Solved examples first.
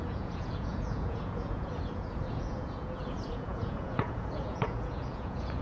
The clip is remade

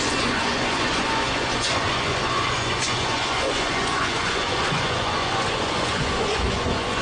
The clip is remade